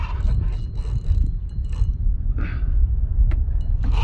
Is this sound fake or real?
real